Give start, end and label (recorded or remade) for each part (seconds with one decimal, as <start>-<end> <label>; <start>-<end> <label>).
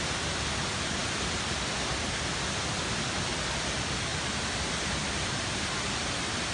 0.0-6.5 recorded